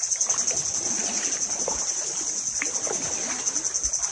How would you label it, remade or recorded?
recorded